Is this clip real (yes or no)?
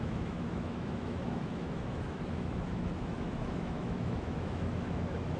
no